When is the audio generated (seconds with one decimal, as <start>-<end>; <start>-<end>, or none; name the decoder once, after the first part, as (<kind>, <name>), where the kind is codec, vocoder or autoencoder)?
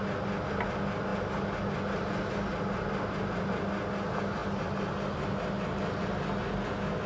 none